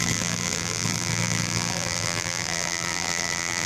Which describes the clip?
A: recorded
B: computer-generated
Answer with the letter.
B